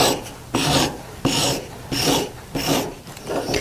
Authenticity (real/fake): real